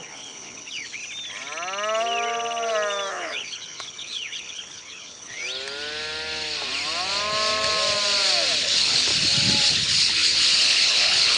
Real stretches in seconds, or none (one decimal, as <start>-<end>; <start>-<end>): 1.0-3.1; 5.4-8.6; 9.1-9.7